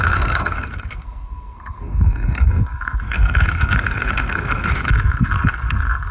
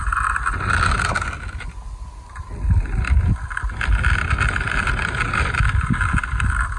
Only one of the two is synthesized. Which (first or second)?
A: first